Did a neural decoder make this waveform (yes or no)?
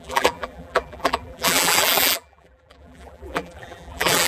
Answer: yes